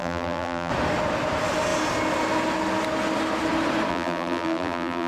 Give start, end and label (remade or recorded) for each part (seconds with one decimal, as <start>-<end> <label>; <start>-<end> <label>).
0.0-0.7 remade; 0.7-3.9 recorded; 3.9-5.1 remade